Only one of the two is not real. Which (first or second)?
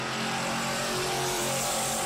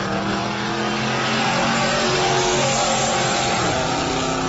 first